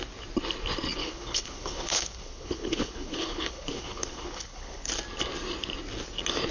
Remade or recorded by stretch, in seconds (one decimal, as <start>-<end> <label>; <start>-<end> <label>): 0.0-1.0 recorded; 1.0-4.9 remade; 4.9-6.5 recorded